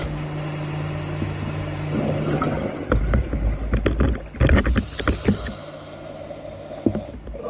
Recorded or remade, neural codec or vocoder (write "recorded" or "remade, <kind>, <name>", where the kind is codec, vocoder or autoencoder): recorded